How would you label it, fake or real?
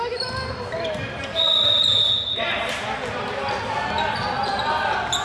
real